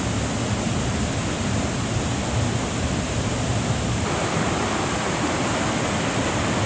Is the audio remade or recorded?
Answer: recorded